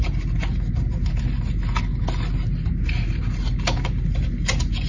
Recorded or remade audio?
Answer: recorded